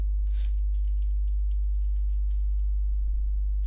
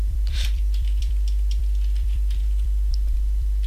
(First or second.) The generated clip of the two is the second